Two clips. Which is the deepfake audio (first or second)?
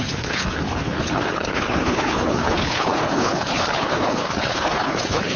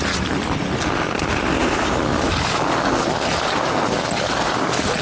first